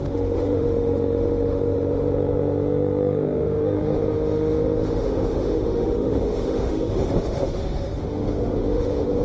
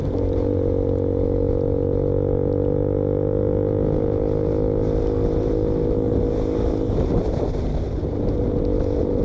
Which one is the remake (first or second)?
first